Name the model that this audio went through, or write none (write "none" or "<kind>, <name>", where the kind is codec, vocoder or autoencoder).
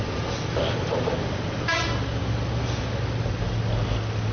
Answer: none